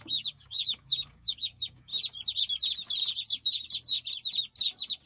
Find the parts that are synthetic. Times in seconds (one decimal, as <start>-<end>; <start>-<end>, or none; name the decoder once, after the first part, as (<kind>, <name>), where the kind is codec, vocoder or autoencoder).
0.0-1.9 (codec, DAC)